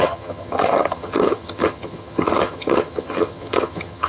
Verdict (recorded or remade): remade